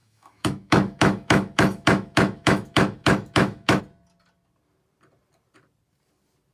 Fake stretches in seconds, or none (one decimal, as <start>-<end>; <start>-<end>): 0.0-3.8